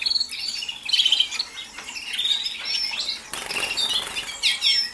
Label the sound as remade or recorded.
recorded